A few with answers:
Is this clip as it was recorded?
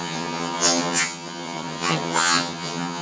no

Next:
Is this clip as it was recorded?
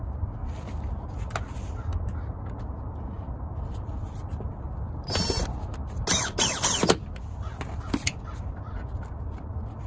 yes